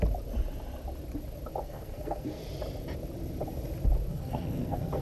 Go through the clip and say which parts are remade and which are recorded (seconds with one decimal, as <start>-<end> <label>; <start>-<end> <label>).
0.0-1.6 recorded; 1.6-2.4 remade; 2.4-4.1 recorded; 4.1-5.0 remade